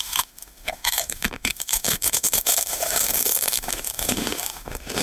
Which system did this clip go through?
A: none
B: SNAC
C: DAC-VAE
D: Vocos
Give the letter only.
C